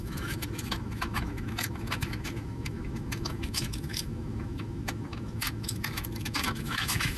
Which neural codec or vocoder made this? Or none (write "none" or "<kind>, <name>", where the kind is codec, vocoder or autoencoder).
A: autoencoder, DAC-VAE